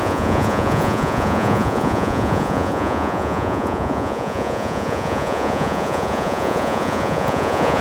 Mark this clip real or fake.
fake